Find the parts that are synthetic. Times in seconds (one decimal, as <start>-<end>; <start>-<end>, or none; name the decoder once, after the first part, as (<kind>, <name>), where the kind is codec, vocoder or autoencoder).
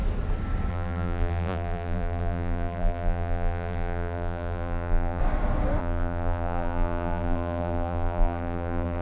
0.7-5.2 (vocoder, BigVGAN v2); 5.8-9.0